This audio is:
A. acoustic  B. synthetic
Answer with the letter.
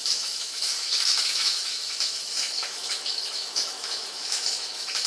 B